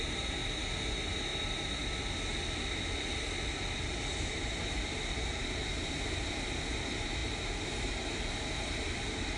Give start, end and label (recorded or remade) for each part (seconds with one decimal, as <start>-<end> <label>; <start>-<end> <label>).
0.0-0.4 remade; 0.4-0.9 recorded; 0.9-1.3 remade; 1.3-4.1 recorded; 4.1-9.4 remade